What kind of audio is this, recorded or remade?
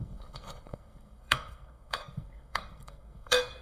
remade